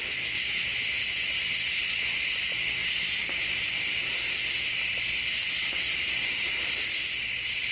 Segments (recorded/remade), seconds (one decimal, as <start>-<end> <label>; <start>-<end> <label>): 0.0-2.8 recorded; 2.8-7.7 remade